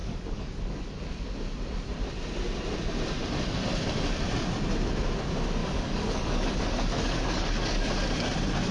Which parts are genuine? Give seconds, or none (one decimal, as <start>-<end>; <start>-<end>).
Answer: 0.6-5.6; 7.9-8.7